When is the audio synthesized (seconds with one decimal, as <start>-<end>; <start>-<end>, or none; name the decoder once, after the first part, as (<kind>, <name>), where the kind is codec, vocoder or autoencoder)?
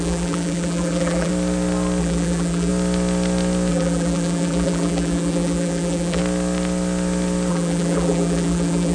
0.0-1.3 (vocoder, BigVGAN v2); 2.0-2.7; 3.7-6.2; 7.5-8.9